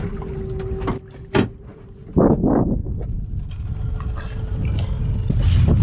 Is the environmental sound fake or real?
real